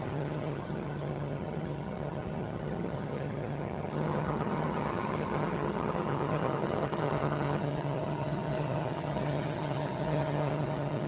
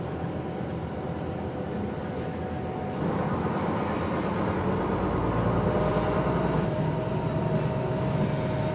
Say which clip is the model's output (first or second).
first